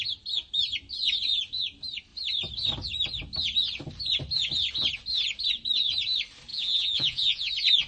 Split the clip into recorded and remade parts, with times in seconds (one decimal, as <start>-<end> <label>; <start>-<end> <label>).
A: 0.0-6.5 recorded; 6.5-7.5 remade; 7.5-7.9 recorded